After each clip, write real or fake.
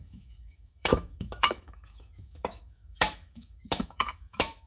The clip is fake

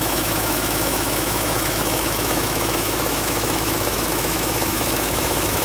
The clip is fake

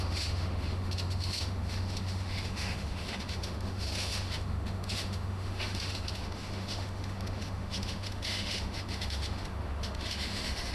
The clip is fake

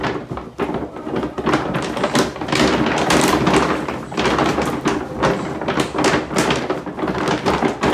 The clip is real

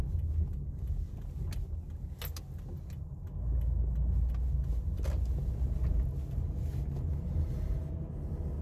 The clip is real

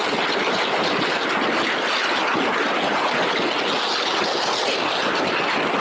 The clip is real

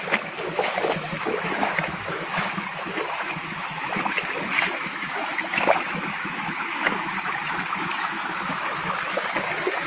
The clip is fake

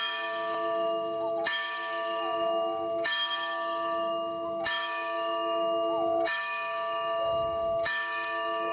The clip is fake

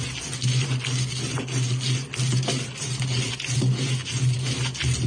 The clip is real